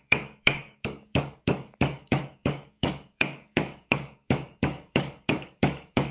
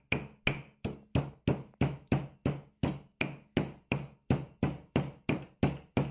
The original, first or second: second